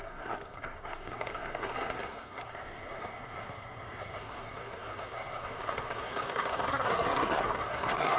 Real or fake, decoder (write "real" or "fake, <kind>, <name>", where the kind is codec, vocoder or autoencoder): fake, codec, SNAC